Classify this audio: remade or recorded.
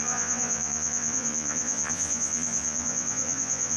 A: remade